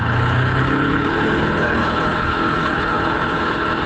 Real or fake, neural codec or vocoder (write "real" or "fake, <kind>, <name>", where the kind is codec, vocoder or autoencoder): fake, codec, HILCodec